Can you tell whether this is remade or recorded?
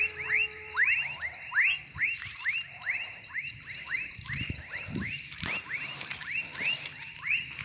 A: remade